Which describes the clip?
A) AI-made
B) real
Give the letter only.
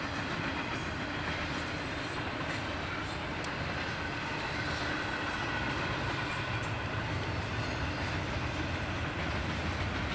B